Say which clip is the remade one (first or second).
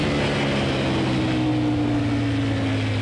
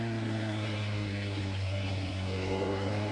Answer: second